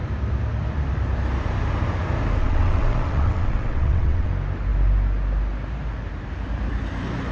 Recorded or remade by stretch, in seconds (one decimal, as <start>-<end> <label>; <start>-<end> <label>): 0.0-2.4 recorded; 2.4-4.3 remade; 4.3-7.3 recorded